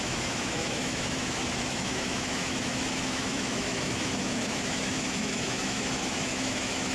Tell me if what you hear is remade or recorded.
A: remade